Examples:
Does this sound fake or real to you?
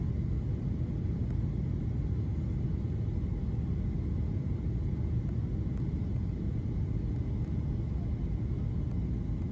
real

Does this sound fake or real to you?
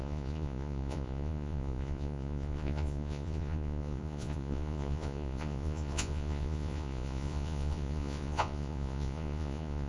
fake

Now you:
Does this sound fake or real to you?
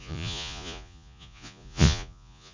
fake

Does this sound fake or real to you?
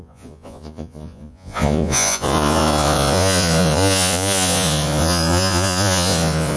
fake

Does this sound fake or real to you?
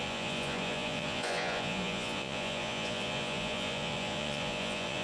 fake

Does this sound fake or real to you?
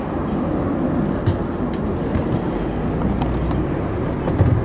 real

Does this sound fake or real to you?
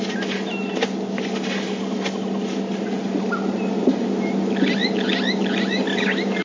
real